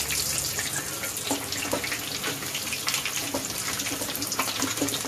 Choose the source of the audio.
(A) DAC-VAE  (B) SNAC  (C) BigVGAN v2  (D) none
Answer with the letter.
D